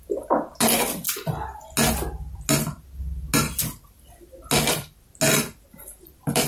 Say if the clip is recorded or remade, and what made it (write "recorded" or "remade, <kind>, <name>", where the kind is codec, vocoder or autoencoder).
recorded